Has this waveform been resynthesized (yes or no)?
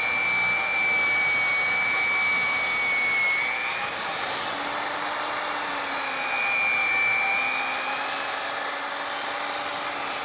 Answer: no